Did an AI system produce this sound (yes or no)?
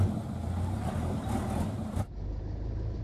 no